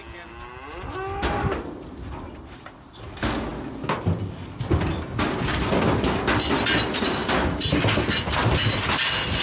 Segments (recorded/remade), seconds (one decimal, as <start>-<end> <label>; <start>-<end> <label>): 0.0-9.4 recorded